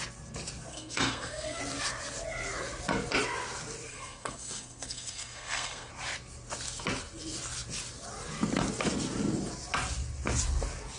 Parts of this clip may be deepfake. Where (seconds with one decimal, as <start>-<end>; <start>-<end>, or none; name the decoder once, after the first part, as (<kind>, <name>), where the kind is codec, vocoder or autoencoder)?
0.7-1.6 (codec, SNAC); 3.9-5.9